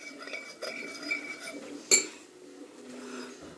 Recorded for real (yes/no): yes